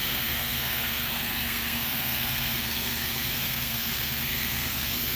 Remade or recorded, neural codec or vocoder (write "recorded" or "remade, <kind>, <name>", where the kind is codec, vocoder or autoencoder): remade, codec, SNAC